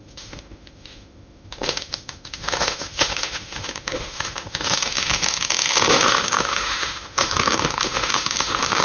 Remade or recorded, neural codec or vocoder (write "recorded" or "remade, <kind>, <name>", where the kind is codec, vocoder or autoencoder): remade, autoencoder, DAC-VAE